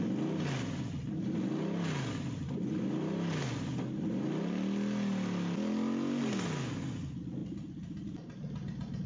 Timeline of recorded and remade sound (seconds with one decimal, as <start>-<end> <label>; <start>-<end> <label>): 0.0-9.1 recorded